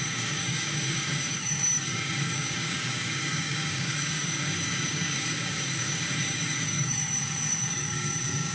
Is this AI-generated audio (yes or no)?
yes